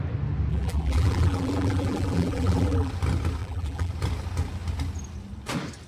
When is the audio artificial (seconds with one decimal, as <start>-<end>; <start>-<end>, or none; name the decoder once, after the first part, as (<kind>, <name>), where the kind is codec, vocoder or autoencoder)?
0.5-2.9 (vocoder, BigVGAN v2); 3.4-3.9